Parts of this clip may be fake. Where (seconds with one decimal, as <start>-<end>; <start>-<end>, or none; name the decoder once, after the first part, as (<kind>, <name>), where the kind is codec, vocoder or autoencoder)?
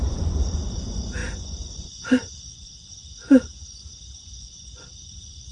0.0-5.5 (vocoder, Vocos)